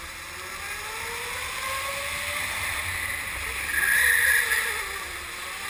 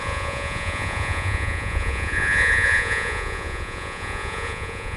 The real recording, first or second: first